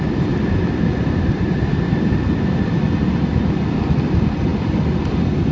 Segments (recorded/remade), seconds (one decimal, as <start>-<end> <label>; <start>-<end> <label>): 0.0-5.5 recorded